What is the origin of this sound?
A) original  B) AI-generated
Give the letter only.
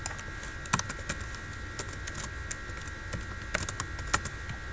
A